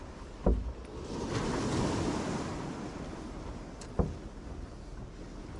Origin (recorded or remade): recorded